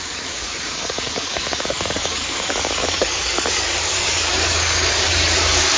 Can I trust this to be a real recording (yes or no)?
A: no